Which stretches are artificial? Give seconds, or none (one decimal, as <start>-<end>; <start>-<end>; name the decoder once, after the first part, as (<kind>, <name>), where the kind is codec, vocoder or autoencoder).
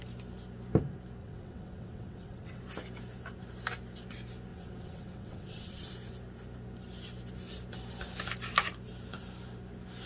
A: 1.2-2.6 (vocoder, WaveNeXt); 4.5-5.9